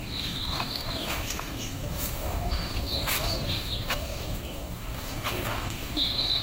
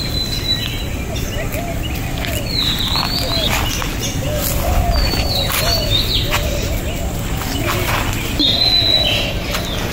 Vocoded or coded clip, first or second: first